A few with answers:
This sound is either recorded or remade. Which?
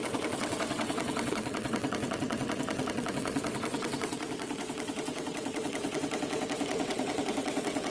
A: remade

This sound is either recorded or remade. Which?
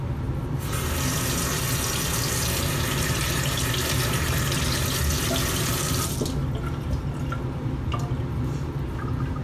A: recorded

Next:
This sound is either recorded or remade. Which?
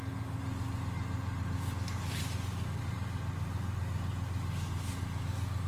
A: recorded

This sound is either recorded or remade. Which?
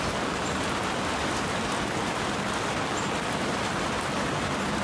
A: recorded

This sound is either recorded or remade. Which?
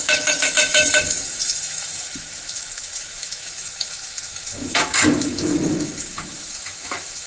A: remade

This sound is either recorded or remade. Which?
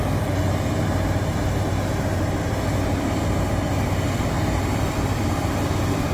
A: recorded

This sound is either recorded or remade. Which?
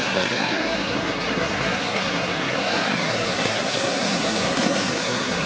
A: remade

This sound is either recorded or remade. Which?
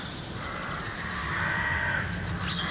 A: recorded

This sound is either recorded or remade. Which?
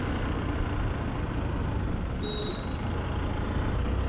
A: recorded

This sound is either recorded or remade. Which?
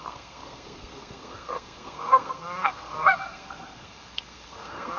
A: remade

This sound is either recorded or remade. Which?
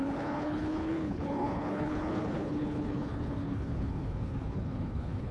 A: remade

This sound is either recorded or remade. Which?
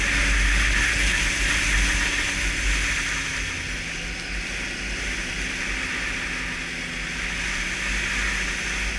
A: recorded